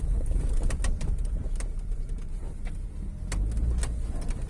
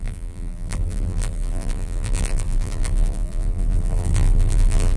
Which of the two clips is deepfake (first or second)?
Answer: second